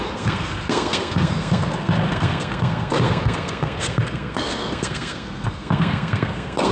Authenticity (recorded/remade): remade